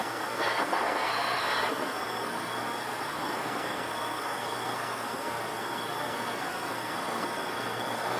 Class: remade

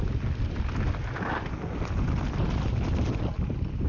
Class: recorded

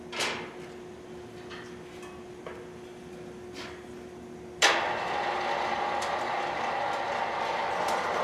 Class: recorded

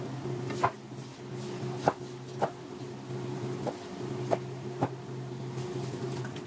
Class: recorded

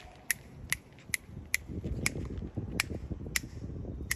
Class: recorded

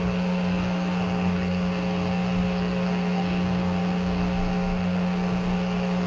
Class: remade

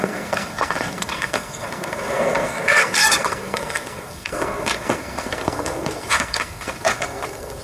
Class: remade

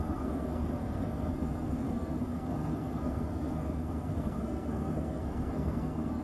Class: remade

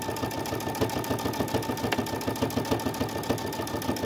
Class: recorded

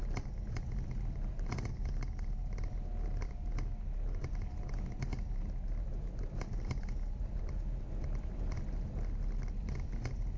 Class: recorded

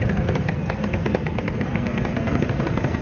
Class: remade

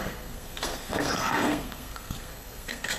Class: remade